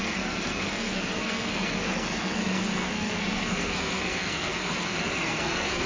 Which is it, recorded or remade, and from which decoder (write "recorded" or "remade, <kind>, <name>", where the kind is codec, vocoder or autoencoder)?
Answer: remade, codec, SNAC